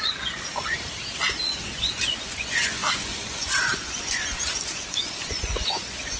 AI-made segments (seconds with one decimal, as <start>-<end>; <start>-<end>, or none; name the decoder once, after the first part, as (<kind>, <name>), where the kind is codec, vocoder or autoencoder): 0.0-0.5 (vocoder, Vocos); 1.4-6.2